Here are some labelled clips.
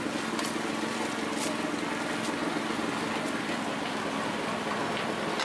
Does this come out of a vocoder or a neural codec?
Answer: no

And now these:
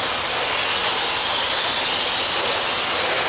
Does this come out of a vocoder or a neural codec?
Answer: no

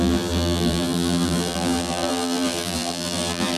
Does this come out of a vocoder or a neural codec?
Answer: yes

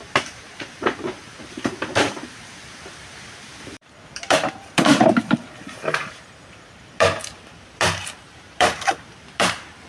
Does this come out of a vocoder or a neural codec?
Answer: yes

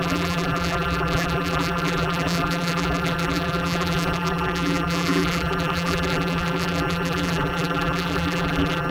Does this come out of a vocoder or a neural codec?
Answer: yes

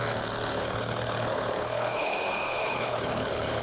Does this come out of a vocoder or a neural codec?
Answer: yes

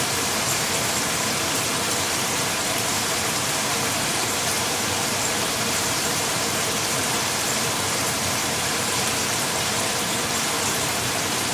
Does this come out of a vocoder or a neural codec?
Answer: yes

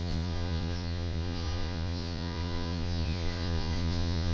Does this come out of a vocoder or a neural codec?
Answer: yes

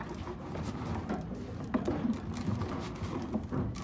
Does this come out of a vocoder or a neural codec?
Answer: no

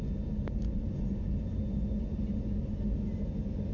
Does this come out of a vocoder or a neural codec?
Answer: no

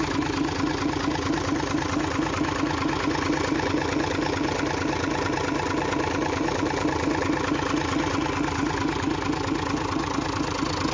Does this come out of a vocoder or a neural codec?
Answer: no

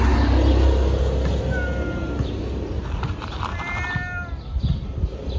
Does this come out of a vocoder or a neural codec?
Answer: no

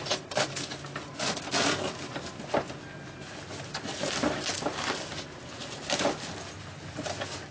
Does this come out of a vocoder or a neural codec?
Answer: no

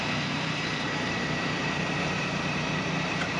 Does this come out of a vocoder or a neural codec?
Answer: yes